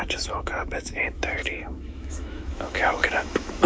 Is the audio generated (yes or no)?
yes